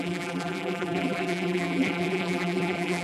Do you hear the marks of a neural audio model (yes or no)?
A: yes